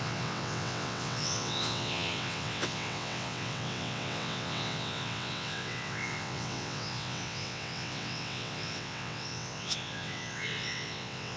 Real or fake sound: fake